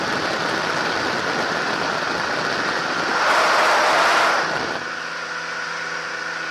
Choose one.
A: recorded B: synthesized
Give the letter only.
A